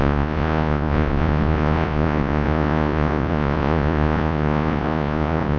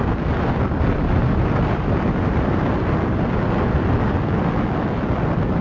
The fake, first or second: first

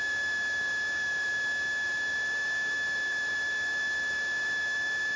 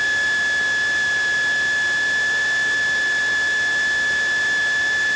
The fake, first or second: first